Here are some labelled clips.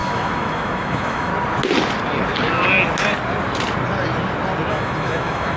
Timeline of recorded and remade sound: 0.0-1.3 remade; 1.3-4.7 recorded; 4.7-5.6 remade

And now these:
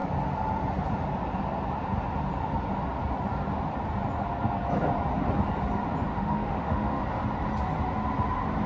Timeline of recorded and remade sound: 0.0-6.1 recorded; 6.1-7.0 remade; 7.0-8.7 recorded

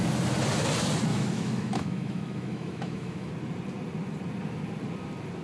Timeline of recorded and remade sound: 0.0-1.1 recorded; 1.1-3.3 remade; 3.3-5.4 recorded

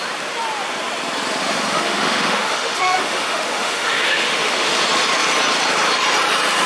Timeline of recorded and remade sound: 0.0-1.4 recorded; 1.4-4.8 remade; 4.8-6.7 recorded

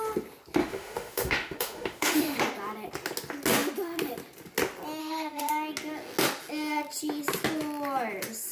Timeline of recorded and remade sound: 0.0-0.6 recorded; 0.6-2.4 remade; 2.4-5.0 recorded; 5.0-5.5 remade; 5.5-8.5 recorded

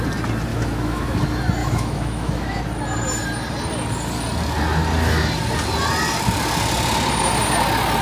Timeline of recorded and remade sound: 0.0-0.5 recorded; 0.5-1.2 remade; 1.2-1.6 recorded; 1.6-2.6 remade; 2.6-8.0 recorded

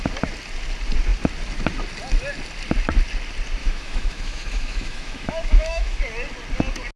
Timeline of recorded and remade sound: 0.0-3.6 recorded; 3.6-6.0 remade; 6.0-7.0 recorded

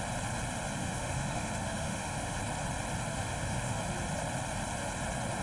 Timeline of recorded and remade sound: 0.0-0.8 recorded; 0.8-2.4 remade; 2.4-3.1 recorded; 3.1-3.8 remade; 3.8-5.4 recorded